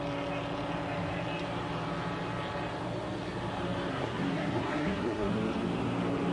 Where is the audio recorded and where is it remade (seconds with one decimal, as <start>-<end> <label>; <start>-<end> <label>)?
0.0-3.9 recorded; 3.9-5.3 remade; 5.3-6.3 recorded